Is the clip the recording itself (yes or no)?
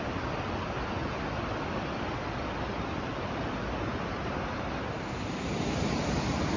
yes